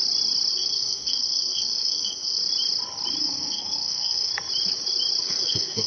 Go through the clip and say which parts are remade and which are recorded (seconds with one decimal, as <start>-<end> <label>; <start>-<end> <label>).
0.0-0.5 recorded; 0.5-2.4 remade; 2.4-3.2 recorded; 3.2-4.3 remade; 4.3-5.2 recorded; 5.2-5.9 remade